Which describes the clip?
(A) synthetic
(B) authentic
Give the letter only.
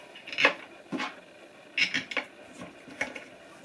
B